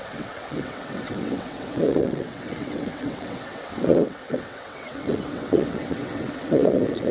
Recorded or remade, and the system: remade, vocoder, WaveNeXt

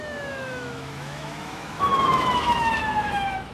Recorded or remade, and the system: remade, autoencoder, DAC-VAE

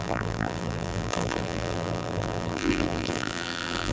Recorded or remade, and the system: remade, vocoder, BigVGAN v2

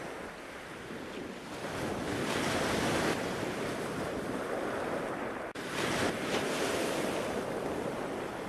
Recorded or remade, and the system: recorded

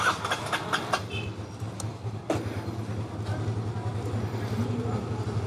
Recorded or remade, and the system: recorded